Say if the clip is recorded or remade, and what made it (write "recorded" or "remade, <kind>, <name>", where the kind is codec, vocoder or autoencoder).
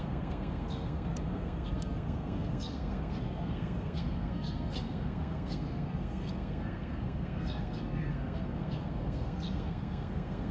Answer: remade, codec, SNAC